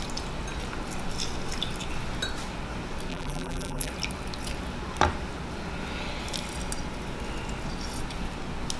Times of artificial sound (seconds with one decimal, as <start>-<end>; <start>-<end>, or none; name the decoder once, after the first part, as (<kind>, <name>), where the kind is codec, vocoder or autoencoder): 3.1-3.9 (vocoder, BigVGAN v2)

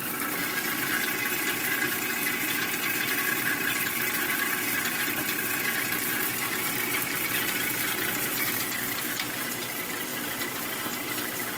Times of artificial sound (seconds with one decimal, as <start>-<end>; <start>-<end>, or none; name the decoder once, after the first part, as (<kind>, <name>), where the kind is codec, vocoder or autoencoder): 0.0-11.6 (vocoder, BigVGAN v2)

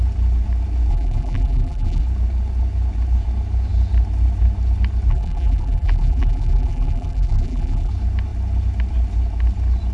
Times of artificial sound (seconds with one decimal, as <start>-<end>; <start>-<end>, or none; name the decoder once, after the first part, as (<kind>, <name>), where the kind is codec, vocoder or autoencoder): 0.9-2.0 (vocoder, BigVGAN v2); 5.1-7.9

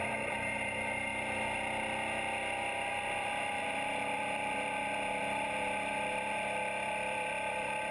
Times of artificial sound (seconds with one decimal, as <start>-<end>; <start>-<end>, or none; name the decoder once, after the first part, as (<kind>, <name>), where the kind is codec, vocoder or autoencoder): 0.0-1.1 (vocoder, BigVGAN v2); 2.9-7.9

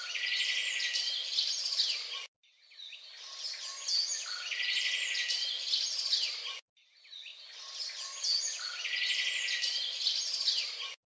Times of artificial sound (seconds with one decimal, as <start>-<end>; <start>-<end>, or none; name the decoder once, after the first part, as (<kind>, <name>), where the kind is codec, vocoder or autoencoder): none